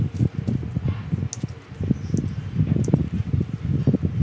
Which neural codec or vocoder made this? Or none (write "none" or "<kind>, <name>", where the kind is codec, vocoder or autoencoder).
none